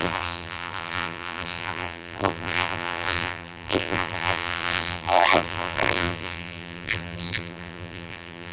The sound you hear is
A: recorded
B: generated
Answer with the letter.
B